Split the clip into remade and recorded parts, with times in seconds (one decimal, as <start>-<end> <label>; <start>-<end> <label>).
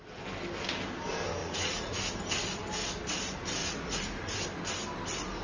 0.0-1.4 recorded; 1.4-2.0 remade; 2.0-3.6 recorded; 3.6-4.3 remade; 4.3-5.4 recorded